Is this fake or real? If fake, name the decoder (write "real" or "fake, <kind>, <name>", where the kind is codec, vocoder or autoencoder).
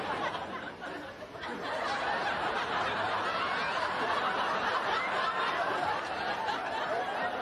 real